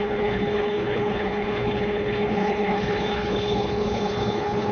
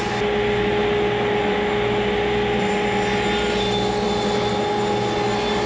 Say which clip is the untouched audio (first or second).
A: second